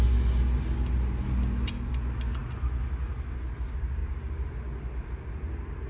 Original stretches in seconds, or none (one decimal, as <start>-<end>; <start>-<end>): 0.0-5.9